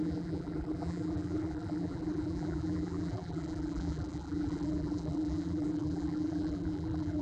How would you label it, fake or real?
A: fake